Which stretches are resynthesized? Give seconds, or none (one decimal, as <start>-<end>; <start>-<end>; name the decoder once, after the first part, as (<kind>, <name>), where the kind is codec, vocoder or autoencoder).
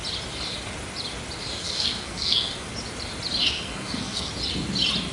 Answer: 1.6-2.7 (codec, SNAC); 3.4-4.3